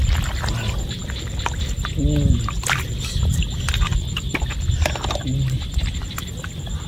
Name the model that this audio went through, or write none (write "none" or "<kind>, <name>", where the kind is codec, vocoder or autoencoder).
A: none